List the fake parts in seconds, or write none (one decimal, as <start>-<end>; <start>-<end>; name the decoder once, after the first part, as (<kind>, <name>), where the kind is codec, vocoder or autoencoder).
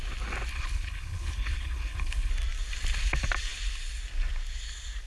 0.5-2.3 (codec, HILCodec)